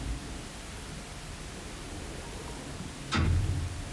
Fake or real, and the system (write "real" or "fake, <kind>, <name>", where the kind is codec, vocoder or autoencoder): real